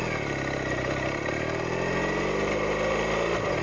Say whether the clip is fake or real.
real